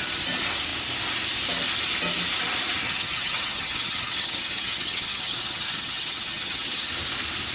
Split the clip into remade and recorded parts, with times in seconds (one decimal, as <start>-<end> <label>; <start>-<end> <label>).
0.0-2.8 recorded; 2.8-6.9 remade; 6.9-7.5 recorded